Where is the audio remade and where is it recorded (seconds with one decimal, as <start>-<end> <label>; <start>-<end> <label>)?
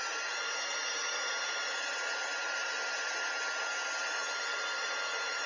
0.0-5.5 recorded